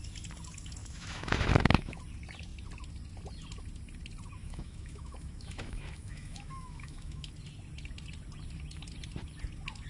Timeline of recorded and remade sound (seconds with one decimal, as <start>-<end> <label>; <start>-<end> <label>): 0.0-0.8 recorded; 0.8-2.0 remade; 2.0-4.4 recorded; 4.4-7.3 remade; 7.3-9.9 recorded